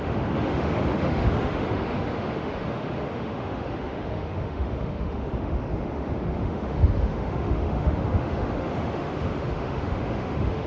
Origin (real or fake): fake